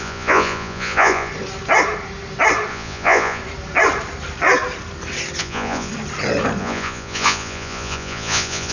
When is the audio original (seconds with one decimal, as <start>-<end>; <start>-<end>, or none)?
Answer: 1.3-2.7; 3.4-5.4; 5.9-6.6